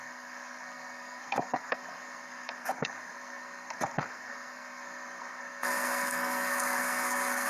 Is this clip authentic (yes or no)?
no